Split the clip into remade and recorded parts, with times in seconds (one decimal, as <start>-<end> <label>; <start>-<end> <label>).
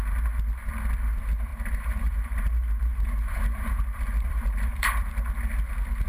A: 0.0-1.5 recorded; 1.5-5.1 remade; 5.1-6.1 recorded